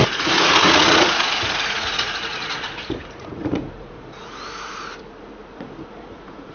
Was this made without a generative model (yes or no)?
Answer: no